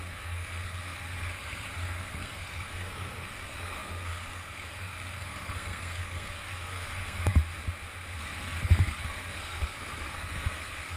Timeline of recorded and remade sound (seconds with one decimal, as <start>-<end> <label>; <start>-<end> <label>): 0.0-7.4 remade; 7.4-8.2 recorded; 8.2-11.0 remade